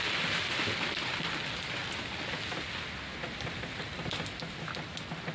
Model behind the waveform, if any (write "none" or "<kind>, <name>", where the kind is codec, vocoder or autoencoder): none